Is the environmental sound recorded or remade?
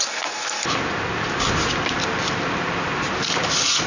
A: recorded